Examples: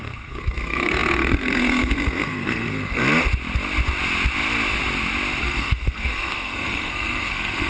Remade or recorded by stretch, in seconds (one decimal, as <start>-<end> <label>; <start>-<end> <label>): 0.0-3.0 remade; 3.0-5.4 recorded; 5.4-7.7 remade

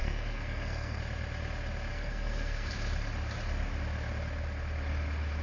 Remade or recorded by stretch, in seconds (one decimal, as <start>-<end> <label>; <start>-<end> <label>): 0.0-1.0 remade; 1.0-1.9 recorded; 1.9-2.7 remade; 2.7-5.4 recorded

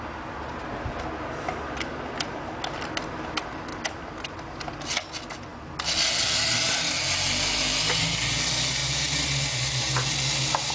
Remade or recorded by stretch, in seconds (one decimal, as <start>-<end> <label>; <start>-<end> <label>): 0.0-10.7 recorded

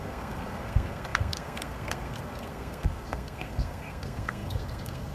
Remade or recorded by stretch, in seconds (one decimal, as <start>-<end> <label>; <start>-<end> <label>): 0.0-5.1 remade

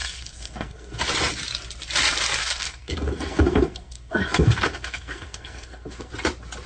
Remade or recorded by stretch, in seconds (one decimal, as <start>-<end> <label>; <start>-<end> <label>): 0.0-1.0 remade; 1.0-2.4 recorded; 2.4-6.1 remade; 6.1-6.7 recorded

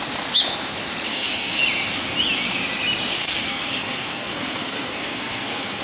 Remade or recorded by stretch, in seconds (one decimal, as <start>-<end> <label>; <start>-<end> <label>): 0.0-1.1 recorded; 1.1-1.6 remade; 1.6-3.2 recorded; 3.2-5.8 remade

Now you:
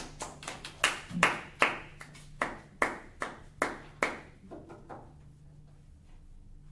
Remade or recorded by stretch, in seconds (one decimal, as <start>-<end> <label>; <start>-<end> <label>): 0.0-6.7 recorded